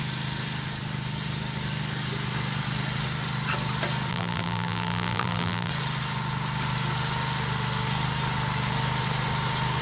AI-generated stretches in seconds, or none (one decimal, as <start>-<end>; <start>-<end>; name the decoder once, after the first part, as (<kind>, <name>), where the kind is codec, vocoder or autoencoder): 4.1-5.7 (vocoder, BigVGAN v2)

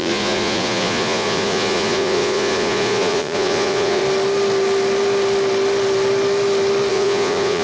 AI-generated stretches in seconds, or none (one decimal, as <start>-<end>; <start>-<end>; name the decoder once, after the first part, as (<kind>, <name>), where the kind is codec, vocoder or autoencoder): 0.0-4.0 (vocoder, Vocos); 6.9-7.6

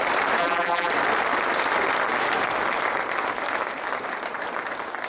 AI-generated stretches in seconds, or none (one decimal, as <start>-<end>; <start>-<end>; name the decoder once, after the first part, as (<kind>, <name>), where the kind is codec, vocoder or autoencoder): 0.4-0.9 (vocoder, BigVGAN v2)

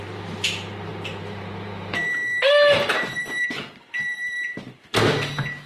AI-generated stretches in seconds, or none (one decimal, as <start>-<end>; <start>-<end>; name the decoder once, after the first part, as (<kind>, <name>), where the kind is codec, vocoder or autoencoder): 0.0-5.0 (vocoder, BigVGAN v2)